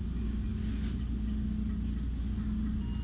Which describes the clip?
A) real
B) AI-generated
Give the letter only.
A